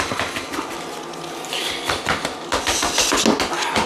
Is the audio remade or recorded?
recorded